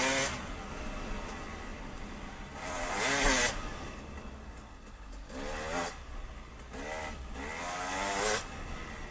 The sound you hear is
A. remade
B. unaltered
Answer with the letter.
B